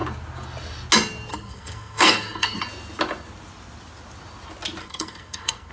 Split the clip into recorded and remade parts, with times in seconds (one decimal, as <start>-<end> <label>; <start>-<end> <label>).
0.0-1.3 recorded; 1.3-2.6 remade; 2.6-4.8 recorded; 4.8-5.7 remade